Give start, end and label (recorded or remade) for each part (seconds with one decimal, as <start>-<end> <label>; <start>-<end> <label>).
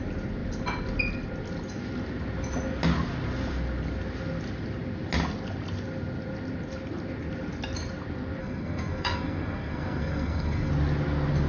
0.0-8.4 recorded; 8.4-10.7 remade; 10.7-11.5 recorded